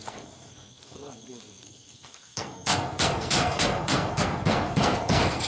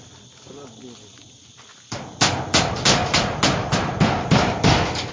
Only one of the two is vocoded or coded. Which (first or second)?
first